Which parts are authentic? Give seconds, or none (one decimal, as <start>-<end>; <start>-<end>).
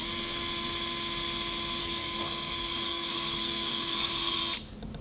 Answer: 0.0-1.8; 4.4-5.0